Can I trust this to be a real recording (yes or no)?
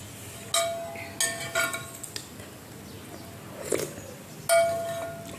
yes